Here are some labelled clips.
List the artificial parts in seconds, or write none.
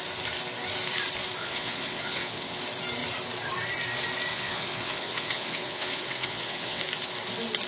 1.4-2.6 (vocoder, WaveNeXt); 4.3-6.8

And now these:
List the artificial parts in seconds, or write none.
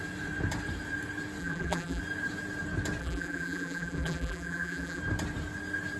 1.4-2.0 (vocoder, BigVGAN v2); 3.0-5.0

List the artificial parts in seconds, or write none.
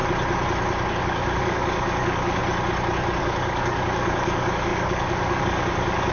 0.9-2.4 (codec, DAC); 3.2-6.1